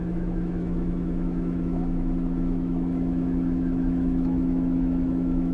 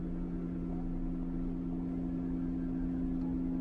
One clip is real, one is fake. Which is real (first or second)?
second